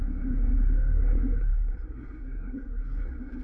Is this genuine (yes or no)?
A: no